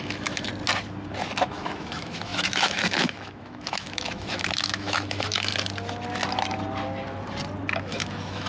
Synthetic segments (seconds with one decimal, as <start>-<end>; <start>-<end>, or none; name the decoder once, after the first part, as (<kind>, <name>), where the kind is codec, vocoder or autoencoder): 0.0-0.5 (autoencoder, DAC-VAE); 1.4-5.5; 7.8-8.5